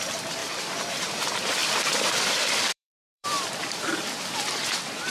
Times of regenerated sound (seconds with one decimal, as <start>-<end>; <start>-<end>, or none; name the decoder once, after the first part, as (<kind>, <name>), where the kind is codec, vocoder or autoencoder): 0.0-5.1 (vocoder, BigVGAN v2)